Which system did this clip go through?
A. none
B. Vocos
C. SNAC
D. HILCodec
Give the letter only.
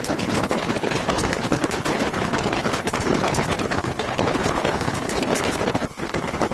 D